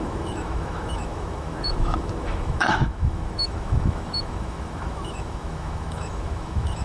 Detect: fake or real fake